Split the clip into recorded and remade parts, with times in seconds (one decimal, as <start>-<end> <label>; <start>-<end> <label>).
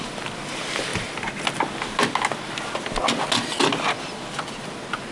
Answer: 0.0-0.9 remade; 0.9-4.0 recorded; 4.0-5.1 remade